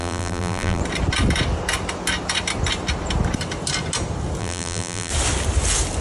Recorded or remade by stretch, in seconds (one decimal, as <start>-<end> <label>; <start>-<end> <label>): 0.0-0.8 remade; 0.8-4.4 recorded; 4.4-5.1 remade; 5.1-6.0 recorded